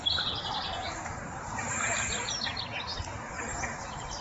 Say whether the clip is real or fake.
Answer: real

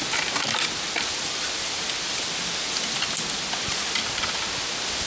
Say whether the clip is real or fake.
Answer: real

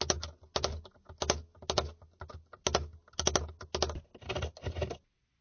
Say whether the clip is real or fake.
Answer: real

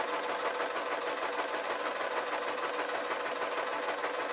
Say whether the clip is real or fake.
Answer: real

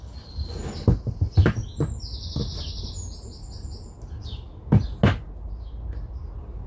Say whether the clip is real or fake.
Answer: real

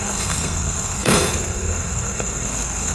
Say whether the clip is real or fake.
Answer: fake